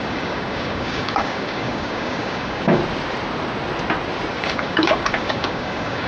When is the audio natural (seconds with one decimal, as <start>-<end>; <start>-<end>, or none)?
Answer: 2.8-4.3